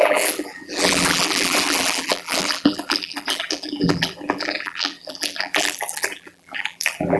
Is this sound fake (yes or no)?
yes